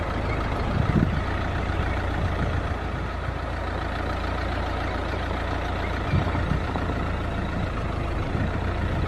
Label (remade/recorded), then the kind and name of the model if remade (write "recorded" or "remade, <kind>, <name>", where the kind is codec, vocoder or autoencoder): remade, vocoder, BigVGAN v2